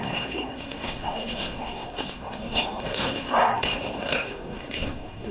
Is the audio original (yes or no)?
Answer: no